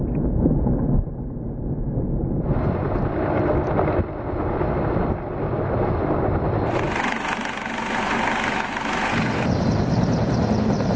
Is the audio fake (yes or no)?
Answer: no